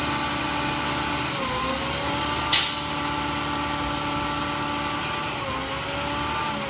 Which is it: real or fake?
real